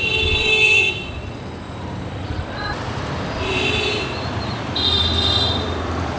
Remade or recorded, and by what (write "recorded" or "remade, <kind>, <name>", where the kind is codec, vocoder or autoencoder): remade, vocoder, BigVGAN v2